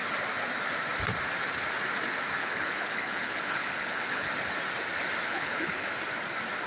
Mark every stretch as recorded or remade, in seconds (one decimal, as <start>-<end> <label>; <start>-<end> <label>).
0.0-2.4 recorded; 2.4-4.3 remade; 4.3-5.3 recorded; 5.3-5.9 remade; 5.9-6.7 recorded